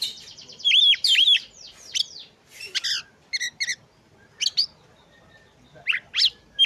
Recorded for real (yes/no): yes